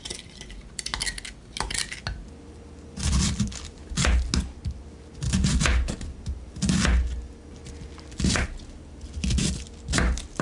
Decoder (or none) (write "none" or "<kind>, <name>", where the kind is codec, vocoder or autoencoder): none